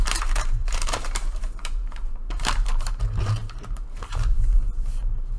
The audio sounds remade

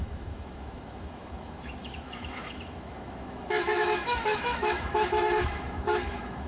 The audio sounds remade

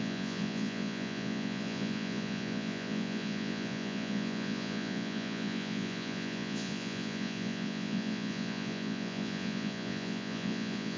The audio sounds remade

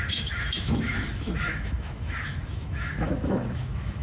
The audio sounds remade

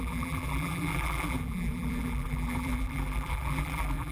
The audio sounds remade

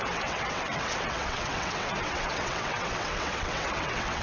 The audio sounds remade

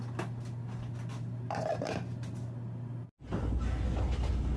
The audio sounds recorded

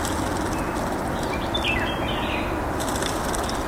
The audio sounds recorded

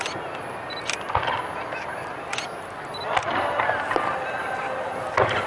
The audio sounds recorded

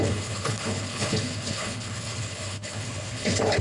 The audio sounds remade